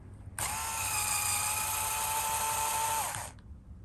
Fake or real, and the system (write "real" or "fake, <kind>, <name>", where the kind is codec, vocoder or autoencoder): real